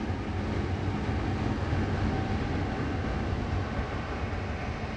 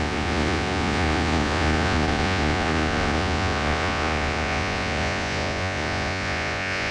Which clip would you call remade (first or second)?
second